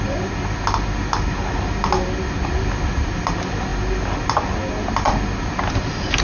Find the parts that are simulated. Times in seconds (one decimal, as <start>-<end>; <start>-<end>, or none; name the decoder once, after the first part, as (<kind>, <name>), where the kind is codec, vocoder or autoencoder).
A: none